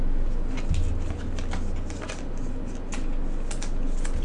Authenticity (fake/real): real